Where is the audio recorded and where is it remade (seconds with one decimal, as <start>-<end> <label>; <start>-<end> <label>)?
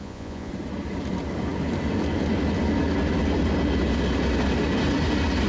0.0-0.5 remade; 0.5-5.5 recorded